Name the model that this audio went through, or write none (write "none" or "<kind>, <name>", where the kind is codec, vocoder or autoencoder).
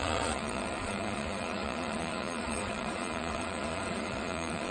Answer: vocoder, Vocos